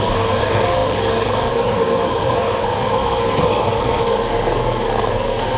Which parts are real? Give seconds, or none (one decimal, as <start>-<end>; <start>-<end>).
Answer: none